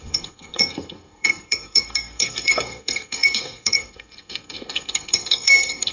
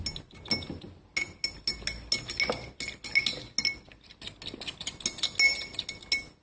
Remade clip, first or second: first